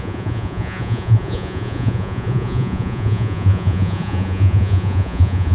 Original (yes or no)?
no